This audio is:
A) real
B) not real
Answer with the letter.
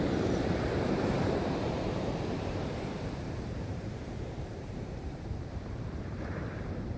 B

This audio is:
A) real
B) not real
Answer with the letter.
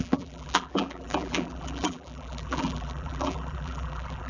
B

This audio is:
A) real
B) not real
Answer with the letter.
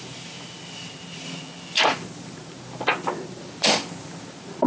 A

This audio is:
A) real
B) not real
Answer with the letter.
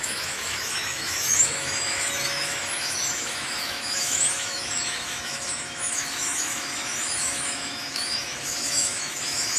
B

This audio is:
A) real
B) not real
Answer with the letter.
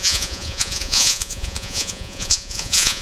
B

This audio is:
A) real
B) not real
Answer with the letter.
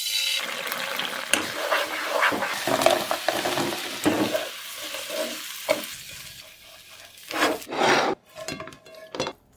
A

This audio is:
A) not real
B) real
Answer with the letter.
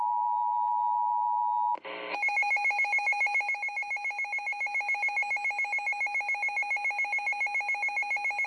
B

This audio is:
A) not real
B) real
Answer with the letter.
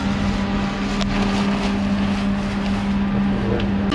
B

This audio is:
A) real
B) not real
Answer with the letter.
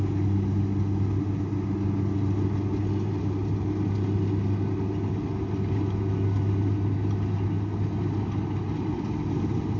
A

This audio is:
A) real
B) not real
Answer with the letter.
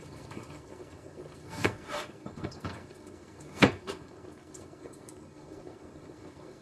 B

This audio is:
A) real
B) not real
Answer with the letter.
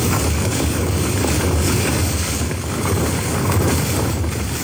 B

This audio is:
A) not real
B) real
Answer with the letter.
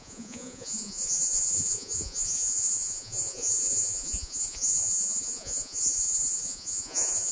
A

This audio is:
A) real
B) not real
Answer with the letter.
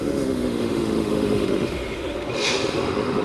B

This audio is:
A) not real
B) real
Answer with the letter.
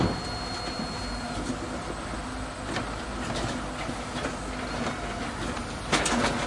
B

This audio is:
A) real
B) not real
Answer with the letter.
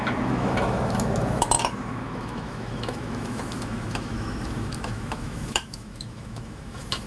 B